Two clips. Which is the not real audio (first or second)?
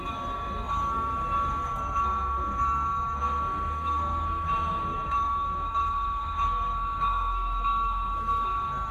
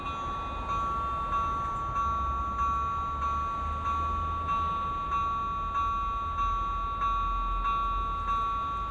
first